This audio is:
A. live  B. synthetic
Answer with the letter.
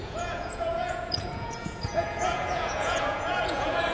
B